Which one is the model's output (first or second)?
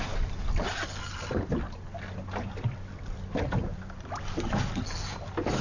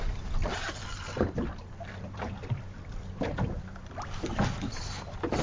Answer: second